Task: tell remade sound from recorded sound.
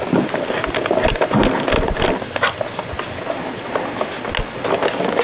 recorded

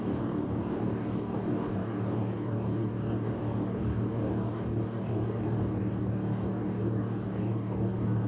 remade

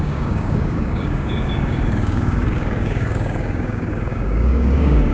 remade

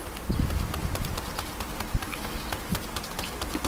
recorded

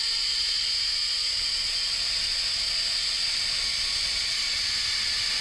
recorded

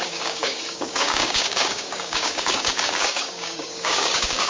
remade